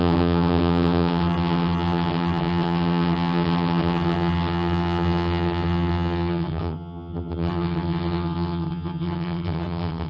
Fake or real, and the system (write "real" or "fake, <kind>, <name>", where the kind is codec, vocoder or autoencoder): fake, vocoder, HiFi-GAN